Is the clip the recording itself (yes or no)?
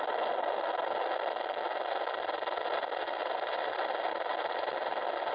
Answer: yes